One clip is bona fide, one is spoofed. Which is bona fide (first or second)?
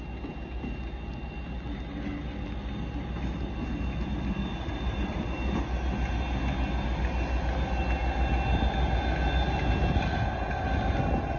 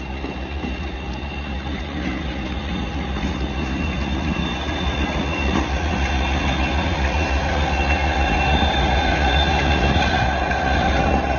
first